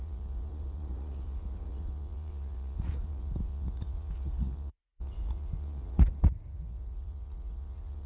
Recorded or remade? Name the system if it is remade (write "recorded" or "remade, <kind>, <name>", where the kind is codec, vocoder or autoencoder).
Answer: remade, vocoder, Vocos